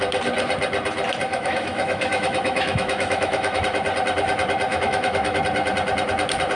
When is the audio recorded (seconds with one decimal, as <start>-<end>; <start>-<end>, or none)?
0.0-1.3; 3.6-4.7; 5.4-6.5